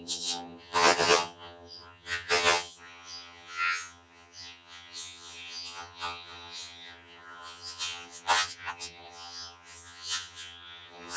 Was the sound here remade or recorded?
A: remade